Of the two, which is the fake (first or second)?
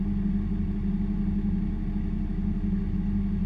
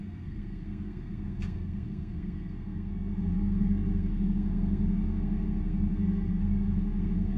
second